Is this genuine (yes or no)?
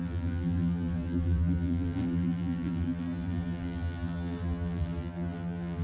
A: no